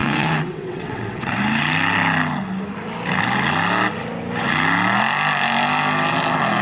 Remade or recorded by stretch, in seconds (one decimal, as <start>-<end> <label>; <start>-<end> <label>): 0.0-1.3 remade; 1.3-6.6 recorded